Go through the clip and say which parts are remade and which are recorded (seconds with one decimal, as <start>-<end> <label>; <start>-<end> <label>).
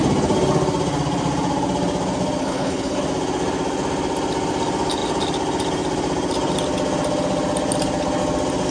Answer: 0.0-2.4 recorded; 2.4-3.0 remade; 3.0-8.7 recorded